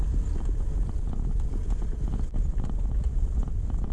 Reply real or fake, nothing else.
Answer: real